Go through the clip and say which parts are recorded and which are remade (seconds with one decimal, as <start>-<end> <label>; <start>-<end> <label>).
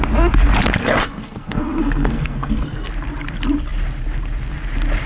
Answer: 0.0-0.8 recorded; 0.8-2.9 remade; 2.9-5.1 recorded